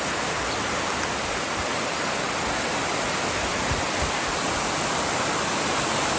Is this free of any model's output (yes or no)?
yes